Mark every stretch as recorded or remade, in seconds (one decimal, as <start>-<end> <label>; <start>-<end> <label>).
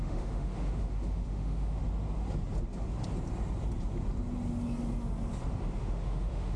0.0-1.8 remade; 1.8-5.8 recorded; 5.8-6.6 remade